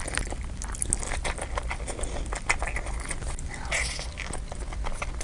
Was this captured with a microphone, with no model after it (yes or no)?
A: yes